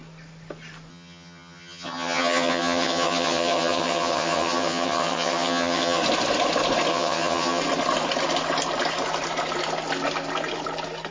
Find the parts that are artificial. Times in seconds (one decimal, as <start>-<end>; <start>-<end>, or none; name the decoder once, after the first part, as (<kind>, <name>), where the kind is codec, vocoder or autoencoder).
0.9-6.0 (vocoder, HiFi-GAN); 6.9-7.6